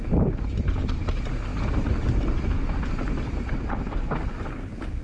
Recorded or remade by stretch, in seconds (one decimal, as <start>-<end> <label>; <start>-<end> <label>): 0.0-5.0 recorded